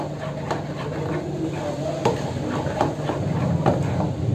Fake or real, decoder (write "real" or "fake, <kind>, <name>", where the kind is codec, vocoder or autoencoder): real